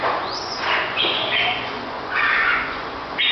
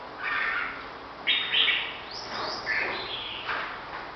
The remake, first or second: first